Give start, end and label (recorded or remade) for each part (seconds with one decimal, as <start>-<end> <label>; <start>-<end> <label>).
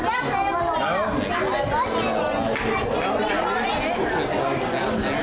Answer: 0.0-5.2 recorded